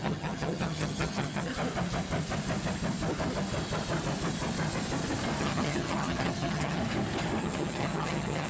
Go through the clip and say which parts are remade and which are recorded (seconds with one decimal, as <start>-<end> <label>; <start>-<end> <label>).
0.0-1.5 remade; 1.5-5.4 recorded; 5.4-6.8 remade; 6.8-7.4 recorded; 7.4-8.5 remade

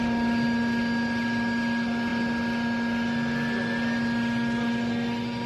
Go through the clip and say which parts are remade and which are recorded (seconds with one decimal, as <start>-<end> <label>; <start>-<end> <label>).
0.0-5.5 recorded

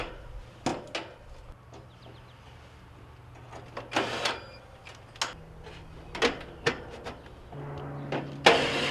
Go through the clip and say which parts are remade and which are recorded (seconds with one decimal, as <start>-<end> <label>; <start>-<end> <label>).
0.0-8.9 recorded

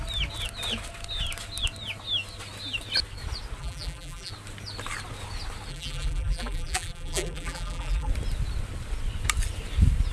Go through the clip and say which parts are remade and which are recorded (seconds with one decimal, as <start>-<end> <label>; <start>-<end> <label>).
0.0-3.6 recorded; 3.6-4.3 remade; 4.3-5.7 recorded; 5.7-8.1 remade; 8.1-10.1 recorded

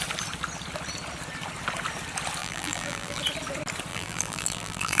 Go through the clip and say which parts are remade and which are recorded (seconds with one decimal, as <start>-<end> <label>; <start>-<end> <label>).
0.0-2.4 recorded; 2.4-3.2 remade; 3.2-3.9 recorded; 3.9-5.0 remade

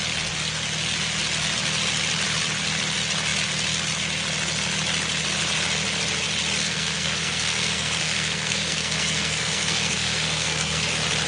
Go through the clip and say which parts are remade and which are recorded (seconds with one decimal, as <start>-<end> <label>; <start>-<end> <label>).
0.0-6.6 recorded; 6.6-10.9 remade; 10.9-11.3 recorded

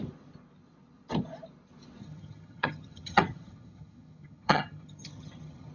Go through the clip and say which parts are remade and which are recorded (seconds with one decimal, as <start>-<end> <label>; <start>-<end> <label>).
0.0-2.0 recorded; 2.0-5.7 remade